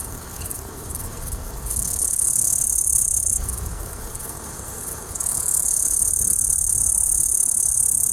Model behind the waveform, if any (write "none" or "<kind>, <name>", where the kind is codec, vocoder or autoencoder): codec, SNAC